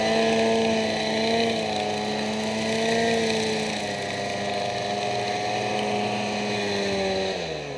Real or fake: real